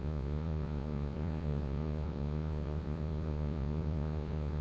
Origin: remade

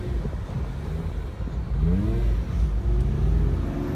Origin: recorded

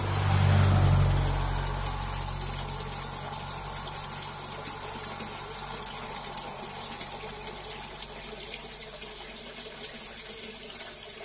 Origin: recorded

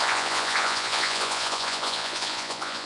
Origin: remade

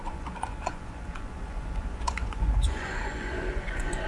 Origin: remade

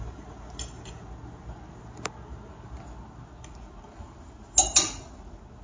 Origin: recorded